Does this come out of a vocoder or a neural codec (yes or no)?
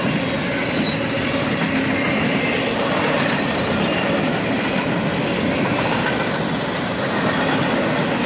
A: no